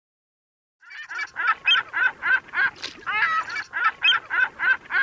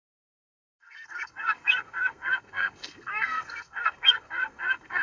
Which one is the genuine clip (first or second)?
first